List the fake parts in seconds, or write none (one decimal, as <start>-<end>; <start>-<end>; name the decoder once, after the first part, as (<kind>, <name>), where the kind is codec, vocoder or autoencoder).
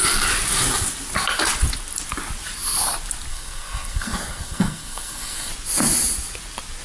3.3-5.5 (codec, SNAC)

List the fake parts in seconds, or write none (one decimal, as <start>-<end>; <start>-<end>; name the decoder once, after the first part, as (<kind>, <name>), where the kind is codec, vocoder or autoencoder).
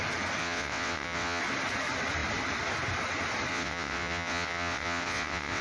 0.4-1.4 (vocoder, WaveNeXt); 3.5-5.6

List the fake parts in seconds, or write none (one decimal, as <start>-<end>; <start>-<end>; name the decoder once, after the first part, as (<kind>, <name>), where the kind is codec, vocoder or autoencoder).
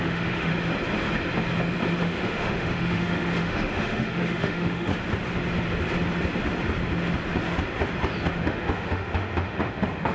0.0-0.5 (autoencoder, DAC-VAE); 2.0-4.9; 8.3-10.1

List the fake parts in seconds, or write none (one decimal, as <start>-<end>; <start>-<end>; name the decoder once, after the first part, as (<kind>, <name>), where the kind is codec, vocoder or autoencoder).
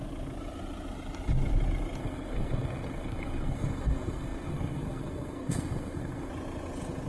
2.0-6.3 (codec, SNAC)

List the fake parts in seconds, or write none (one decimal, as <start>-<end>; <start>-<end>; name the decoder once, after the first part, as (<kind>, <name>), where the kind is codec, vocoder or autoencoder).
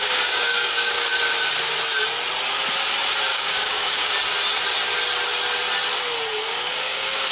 0.0-1.1 (codec, DAC); 3.3-4.1; 6.4-7.3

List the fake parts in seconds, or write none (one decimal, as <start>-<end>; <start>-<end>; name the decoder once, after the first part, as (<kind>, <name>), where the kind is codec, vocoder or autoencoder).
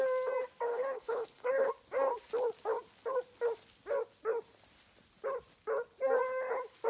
0.7-1.7 (codec, HILCodec)